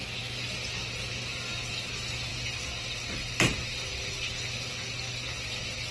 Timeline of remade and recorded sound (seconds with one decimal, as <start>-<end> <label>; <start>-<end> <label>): 0.0-5.9 recorded